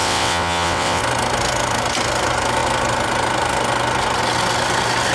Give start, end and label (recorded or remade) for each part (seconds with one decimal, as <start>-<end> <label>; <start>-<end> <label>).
0.0-1.0 remade; 1.0-5.1 recorded